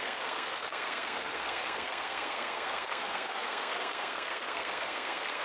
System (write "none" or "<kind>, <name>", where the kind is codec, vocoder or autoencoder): codec, SNAC